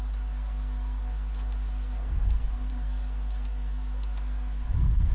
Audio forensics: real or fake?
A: fake